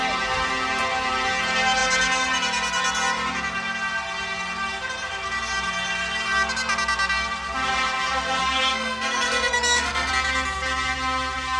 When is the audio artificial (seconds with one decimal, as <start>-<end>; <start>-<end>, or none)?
8.4-10.1